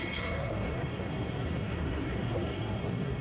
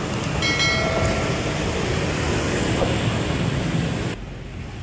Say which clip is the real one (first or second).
second